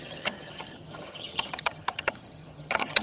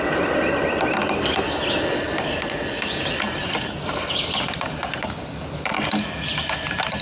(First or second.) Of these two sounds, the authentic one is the second